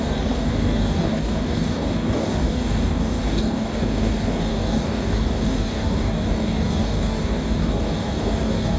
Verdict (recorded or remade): remade